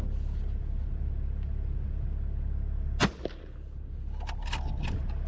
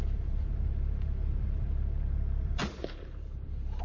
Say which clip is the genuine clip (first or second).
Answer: first